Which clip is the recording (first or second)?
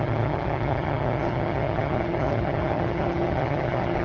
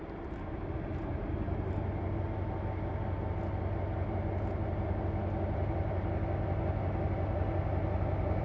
second